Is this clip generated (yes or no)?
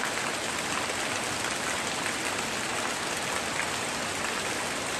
no